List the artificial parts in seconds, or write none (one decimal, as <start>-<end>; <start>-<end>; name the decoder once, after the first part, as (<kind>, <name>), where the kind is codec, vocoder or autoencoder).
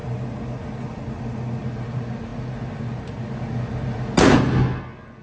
none